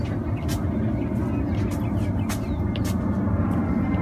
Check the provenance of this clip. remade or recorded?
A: recorded